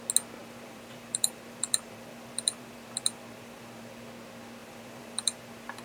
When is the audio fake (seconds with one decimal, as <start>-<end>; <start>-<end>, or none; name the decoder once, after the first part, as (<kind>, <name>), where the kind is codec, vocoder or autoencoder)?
0.4-3.9 (vocoder, BigVGAN v2); 4.6-5.8